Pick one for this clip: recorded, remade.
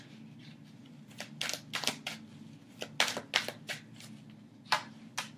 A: recorded